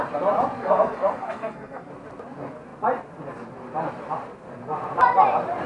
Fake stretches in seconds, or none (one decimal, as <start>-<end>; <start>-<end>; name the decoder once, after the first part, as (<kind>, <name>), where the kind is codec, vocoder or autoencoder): 0.6-1.9 (codec, SNAC)